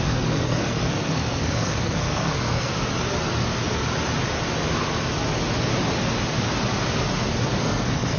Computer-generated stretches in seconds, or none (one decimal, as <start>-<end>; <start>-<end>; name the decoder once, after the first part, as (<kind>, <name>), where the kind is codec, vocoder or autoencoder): 0.0-2.7 (codec, SNAC); 7.6-8.2